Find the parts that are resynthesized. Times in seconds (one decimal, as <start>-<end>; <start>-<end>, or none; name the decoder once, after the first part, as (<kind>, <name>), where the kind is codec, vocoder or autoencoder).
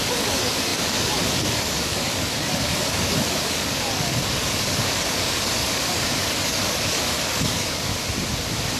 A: 0.0-7.9 (codec, DAC)